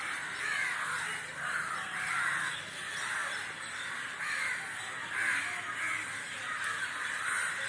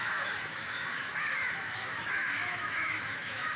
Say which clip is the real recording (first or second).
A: first